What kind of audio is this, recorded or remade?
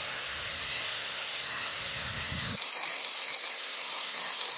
remade